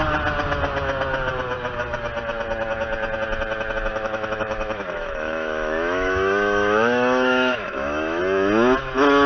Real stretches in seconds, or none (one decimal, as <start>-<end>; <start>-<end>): 0.0-3.9; 8.2-9.3